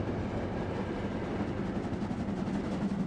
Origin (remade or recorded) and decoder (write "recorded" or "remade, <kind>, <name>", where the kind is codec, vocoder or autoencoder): recorded